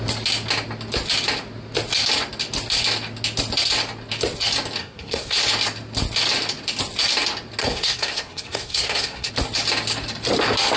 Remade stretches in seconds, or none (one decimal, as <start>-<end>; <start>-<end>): 4.8-5.4; 7.6-9.3